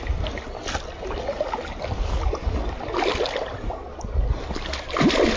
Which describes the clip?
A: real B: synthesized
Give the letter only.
A